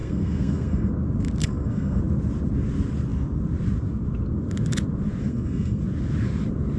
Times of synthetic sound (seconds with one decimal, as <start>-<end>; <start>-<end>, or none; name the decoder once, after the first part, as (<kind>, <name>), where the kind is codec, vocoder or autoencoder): 0.0-0.9 (codec, SNAC); 1.4-2.0; 5.2-5.8